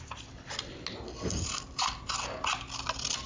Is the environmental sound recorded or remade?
recorded